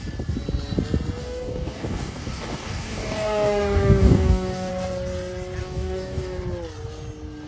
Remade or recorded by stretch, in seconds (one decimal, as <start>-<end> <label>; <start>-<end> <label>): 0.0-1.2 recorded; 1.2-4.7 remade; 4.7-5.6 recorded; 5.6-6.4 remade; 6.4-7.5 recorded

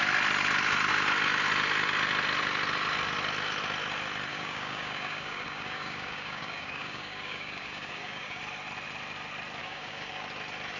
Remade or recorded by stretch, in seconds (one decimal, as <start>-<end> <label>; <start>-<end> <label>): 0.0-4.3 recorded; 4.3-8.4 remade; 8.4-9.6 recorded; 9.6-10.1 remade; 10.1-10.8 recorded

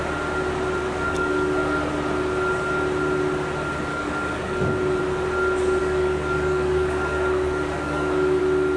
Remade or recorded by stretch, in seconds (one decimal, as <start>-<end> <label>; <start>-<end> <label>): 0.0-0.8 recorded; 0.8-1.9 remade; 1.9-3.9 recorded; 3.9-5.0 remade; 5.0-5.8 recorded; 5.8-8.4 remade; 8.4-8.8 recorded

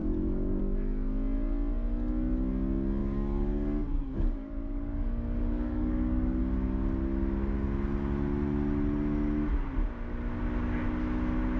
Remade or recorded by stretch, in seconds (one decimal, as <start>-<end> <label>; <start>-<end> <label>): 0.0-0.6 remade; 0.6-3.0 recorded; 3.0-6.4 remade; 6.4-11.6 recorded